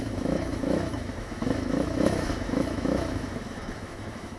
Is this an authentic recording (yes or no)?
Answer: no